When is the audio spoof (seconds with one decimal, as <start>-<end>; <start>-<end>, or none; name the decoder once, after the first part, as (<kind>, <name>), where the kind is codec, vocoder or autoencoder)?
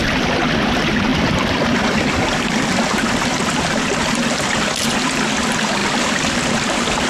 1.1-3.6 (vocoder, BigVGAN v2); 4.0-4.7; 5.8-6.4